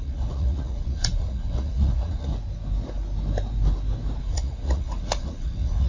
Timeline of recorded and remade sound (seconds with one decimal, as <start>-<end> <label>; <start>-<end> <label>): 0.0-2.3 remade; 2.3-4.2 recorded; 4.2-5.9 remade